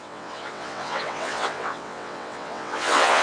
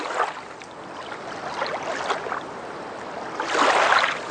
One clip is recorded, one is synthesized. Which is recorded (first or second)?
second